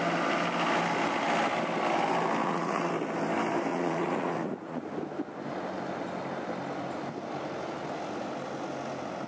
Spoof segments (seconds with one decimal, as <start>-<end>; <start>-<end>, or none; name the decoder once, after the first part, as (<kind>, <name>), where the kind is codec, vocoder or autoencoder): 2.4-2.9 (vocoder, Vocos); 3.7-4.8